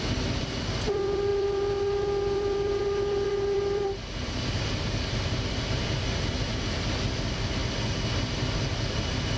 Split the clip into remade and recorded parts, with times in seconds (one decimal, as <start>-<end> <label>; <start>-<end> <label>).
0.0-9.4 remade